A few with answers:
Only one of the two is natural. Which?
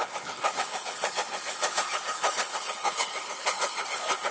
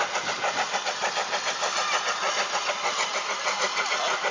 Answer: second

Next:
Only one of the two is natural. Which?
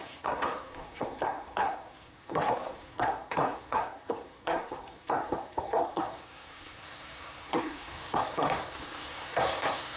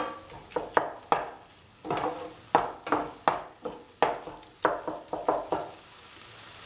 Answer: second